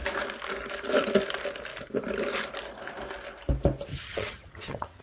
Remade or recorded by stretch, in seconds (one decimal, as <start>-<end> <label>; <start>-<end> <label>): 0.0-3.9 recorded; 3.9-5.0 remade